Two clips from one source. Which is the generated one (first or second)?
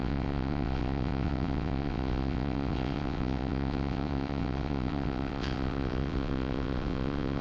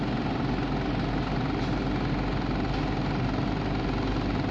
first